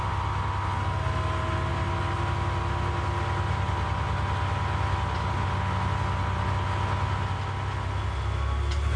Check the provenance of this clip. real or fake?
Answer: real